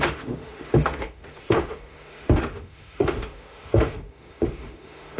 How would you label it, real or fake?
fake